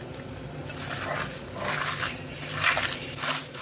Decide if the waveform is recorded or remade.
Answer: recorded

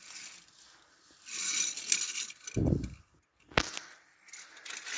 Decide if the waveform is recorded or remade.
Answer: recorded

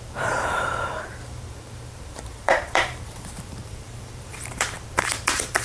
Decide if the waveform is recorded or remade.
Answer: remade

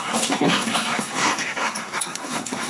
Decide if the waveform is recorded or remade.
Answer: remade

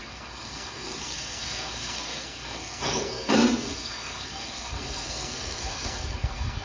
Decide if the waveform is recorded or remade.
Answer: remade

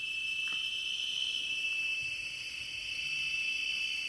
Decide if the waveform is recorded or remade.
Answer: remade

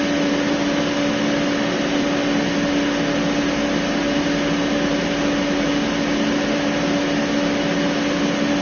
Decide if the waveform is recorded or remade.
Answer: recorded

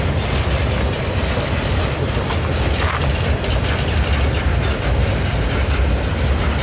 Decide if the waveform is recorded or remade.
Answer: recorded